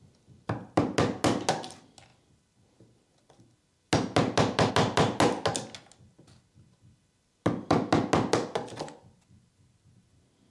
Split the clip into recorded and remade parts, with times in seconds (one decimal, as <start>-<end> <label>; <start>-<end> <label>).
0.0-10.5 recorded